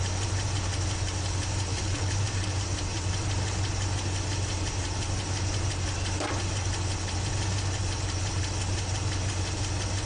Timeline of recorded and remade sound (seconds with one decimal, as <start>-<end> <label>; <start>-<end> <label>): 0.0-1.7 recorded; 1.7-2.2 remade; 2.2-10.1 recorded

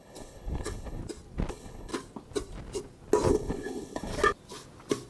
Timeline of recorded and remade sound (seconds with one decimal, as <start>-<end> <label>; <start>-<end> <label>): 0.0-1.0 remade; 1.0-1.5 recorded; 1.5-1.9 remade; 1.9-3.3 recorded; 3.3-4.1 remade; 4.1-5.1 recorded